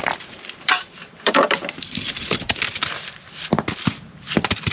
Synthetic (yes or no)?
yes